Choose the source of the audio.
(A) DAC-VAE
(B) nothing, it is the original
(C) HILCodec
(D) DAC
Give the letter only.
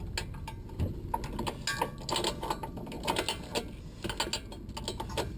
B